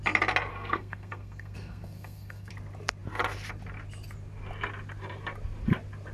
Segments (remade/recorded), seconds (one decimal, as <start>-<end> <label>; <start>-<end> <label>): 0.0-0.5 recorded; 0.5-2.5 remade; 2.5-6.1 recorded